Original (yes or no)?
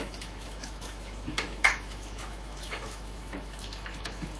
no